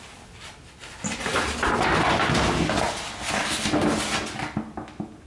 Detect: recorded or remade recorded